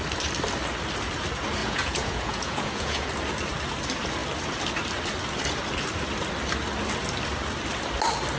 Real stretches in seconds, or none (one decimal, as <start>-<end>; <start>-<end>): 0.0-1.6; 3.1-8.4